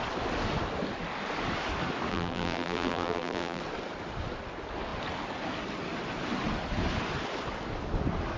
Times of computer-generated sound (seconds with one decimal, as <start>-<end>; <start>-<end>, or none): 2.1-3.6